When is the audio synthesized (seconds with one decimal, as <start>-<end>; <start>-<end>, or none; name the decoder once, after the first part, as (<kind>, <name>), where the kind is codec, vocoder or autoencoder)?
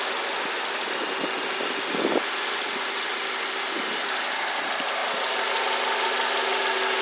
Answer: none